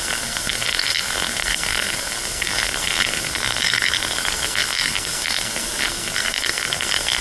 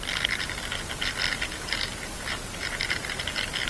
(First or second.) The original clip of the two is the second